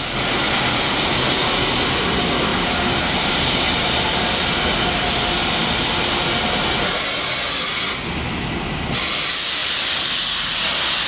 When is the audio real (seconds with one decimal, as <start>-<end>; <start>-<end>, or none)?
0.0-2.5; 4.2-9.6; 10.5-11.1